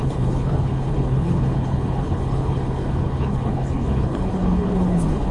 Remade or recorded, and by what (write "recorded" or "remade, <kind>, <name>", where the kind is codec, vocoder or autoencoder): remade, codec, HILCodec